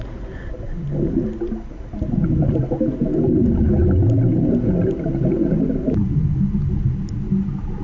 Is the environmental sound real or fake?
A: real